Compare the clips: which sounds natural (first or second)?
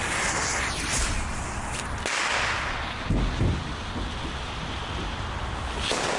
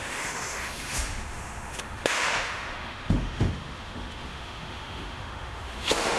first